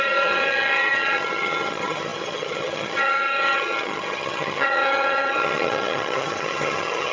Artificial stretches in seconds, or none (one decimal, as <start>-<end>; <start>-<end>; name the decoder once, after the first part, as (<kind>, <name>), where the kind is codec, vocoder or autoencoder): 0.0-7.1 (vocoder, HiFi-GAN)